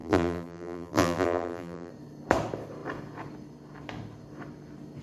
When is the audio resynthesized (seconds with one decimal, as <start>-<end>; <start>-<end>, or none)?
0.0-1.9